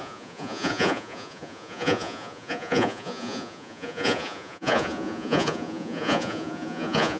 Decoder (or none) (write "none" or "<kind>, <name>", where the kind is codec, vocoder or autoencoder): vocoder, Vocos